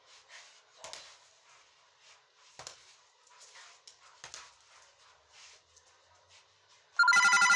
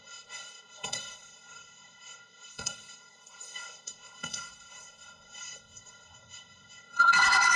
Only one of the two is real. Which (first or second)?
first